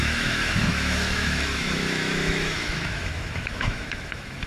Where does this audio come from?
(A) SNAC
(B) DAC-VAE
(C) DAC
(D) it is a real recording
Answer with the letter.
B